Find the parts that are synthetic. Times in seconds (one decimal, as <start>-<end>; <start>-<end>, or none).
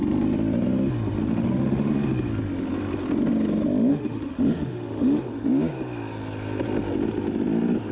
1.2-1.9; 3.9-5.2